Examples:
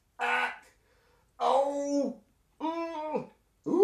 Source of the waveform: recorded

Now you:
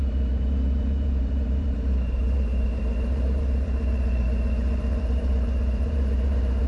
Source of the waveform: remade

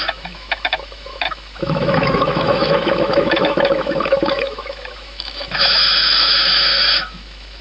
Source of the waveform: remade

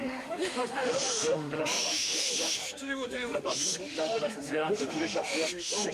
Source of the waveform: remade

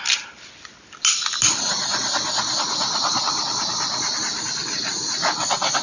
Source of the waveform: recorded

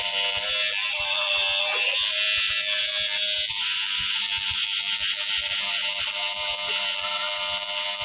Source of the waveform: recorded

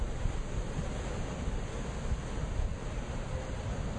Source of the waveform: recorded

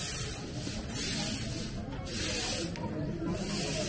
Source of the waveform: recorded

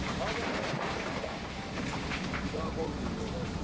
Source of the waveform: remade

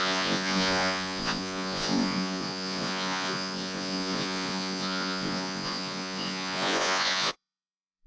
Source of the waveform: remade